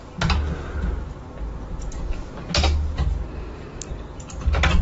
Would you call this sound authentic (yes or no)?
yes